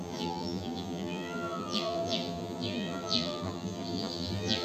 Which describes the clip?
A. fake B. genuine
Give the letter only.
A